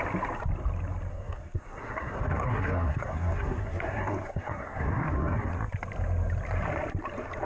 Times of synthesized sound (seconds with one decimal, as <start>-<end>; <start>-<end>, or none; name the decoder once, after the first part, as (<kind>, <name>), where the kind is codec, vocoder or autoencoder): 1.1-5.5 (codec, SNAC)